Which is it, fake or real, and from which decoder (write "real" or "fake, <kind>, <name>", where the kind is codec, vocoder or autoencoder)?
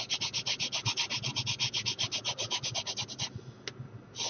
real